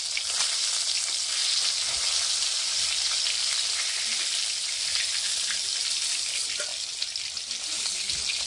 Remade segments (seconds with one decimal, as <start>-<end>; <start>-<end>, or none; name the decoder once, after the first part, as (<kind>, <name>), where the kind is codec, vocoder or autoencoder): none